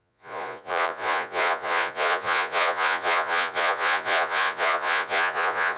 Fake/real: fake